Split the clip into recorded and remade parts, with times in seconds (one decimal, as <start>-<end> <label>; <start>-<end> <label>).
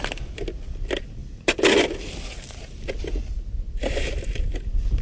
0.0-5.0 recorded